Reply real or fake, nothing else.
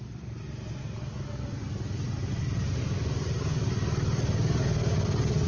real